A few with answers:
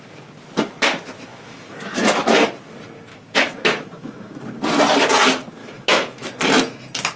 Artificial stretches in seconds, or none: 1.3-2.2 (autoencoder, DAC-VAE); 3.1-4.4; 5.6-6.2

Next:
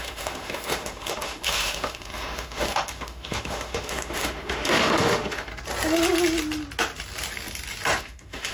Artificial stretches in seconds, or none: 0.0-5.5 (autoencoder, DAC-VAE); 8.0-8.5